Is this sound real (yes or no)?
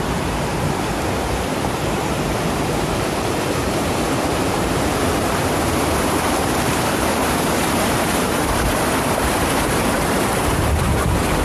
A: no